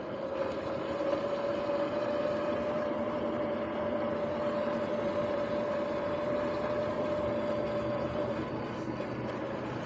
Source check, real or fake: real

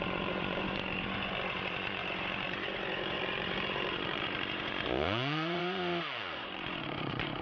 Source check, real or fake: fake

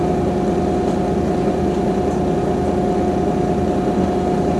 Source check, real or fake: real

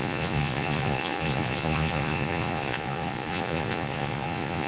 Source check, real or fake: fake